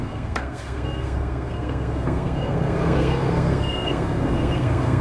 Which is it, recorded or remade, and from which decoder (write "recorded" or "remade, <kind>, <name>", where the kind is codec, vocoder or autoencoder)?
remade, codec, SNAC